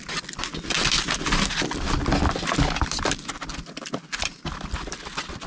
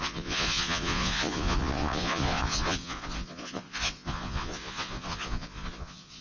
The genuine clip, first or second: first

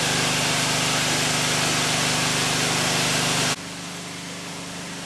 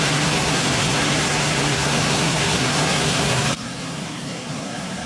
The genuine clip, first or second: first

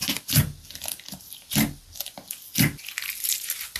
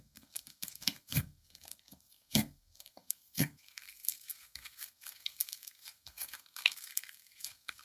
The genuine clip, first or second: first